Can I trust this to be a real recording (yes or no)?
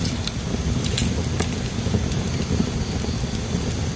yes